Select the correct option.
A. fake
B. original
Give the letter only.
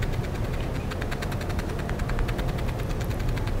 B